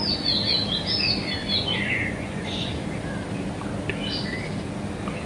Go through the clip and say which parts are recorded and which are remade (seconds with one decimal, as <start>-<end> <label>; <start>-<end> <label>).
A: 0.0-1.4 recorded; 1.4-2.7 remade; 2.7-5.3 recorded